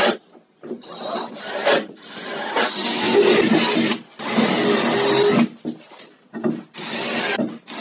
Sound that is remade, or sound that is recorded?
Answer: recorded